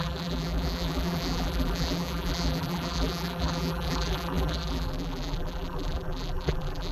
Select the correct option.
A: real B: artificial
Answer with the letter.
B